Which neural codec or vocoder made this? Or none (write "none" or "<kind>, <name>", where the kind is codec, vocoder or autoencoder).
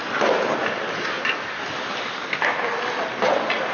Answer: none